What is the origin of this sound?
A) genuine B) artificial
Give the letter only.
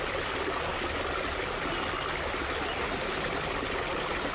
A